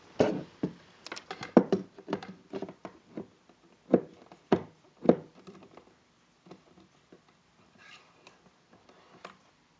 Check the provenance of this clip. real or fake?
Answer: fake